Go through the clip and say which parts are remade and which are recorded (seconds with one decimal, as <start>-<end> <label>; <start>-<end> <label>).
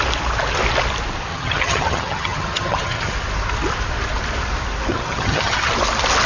0.0-1.3 recorded; 1.3-3.1 remade; 3.1-4.9 recorded; 4.9-5.7 remade; 5.7-6.3 recorded